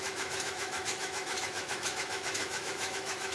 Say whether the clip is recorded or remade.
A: remade